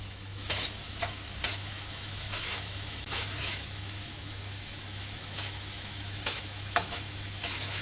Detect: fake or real fake